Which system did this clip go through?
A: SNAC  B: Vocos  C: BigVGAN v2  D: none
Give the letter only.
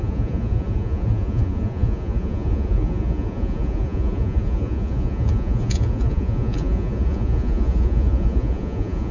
B